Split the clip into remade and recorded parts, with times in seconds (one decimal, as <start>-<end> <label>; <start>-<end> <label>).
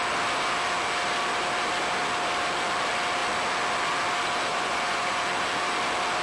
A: 0.0-4.5 recorded; 4.5-5.2 remade; 5.2-6.2 recorded